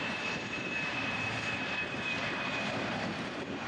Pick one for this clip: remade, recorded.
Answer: remade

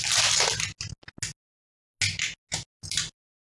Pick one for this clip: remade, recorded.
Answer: recorded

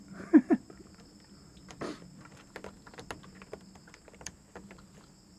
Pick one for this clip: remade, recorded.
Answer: recorded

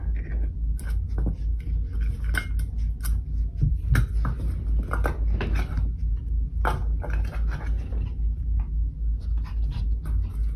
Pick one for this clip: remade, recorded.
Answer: recorded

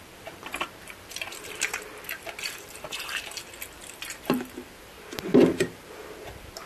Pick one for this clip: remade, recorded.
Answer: remade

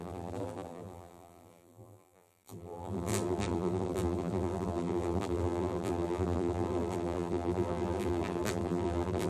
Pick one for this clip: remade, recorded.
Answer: remade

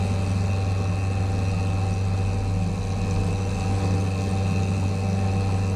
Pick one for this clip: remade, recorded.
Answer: recorded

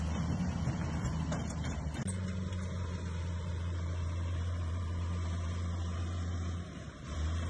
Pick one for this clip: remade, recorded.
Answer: remade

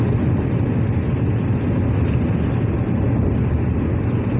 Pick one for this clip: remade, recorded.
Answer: recorded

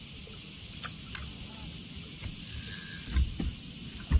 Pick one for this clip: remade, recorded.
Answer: recorded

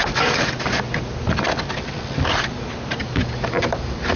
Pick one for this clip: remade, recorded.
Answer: recorded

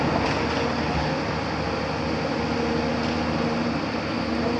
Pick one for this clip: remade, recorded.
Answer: recorded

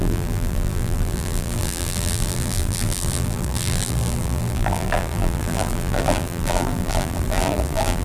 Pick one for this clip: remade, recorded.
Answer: remade